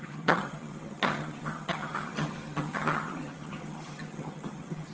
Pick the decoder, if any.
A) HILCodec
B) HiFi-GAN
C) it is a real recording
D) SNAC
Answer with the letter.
B